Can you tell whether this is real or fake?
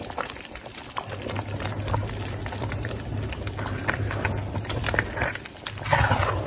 fake